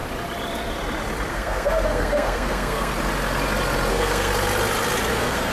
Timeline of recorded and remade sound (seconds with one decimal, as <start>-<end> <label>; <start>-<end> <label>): 0.0-1.3 recorded; 1.3-2.9 remade; 2.9-3.9 recorded; 3.9-4.3 remade; 4.3-5.1 recorded; 5.1-5.5 remade